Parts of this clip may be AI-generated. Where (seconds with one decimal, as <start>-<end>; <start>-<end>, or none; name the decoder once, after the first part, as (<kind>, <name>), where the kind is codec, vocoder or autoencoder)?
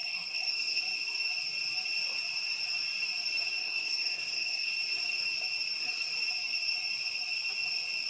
0.0-0.8 (codec, SNAC); 3.6-4.7